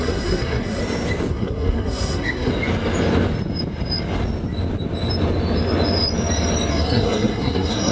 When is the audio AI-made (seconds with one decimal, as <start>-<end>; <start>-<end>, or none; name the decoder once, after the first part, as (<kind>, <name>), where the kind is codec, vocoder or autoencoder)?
0.0-0.8 (codec, SNAC); 1.3-2.5; 6.7-7.9